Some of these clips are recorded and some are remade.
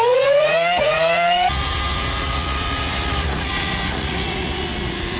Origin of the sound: remade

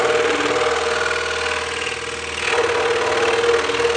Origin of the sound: recorded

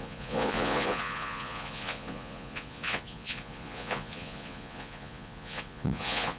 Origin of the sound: remade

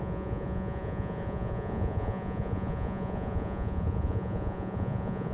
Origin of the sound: remade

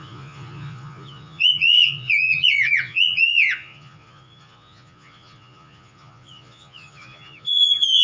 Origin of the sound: remade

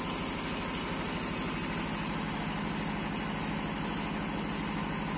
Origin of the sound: recorded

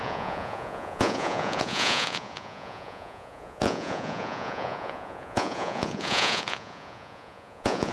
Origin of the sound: remade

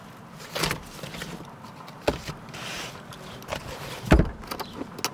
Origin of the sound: recorded